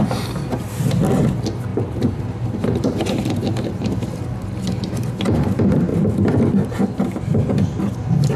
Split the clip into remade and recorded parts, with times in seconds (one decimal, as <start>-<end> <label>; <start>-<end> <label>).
0.0-1.7 recorded; 1.7-4.2 remade; 4.2-8.4 recorded